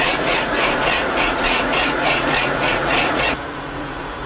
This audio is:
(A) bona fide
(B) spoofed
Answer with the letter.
B